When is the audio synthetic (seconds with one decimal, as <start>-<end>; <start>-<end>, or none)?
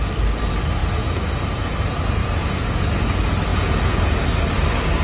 0.8-1.7; 2.2-3.0; 3.5-4.2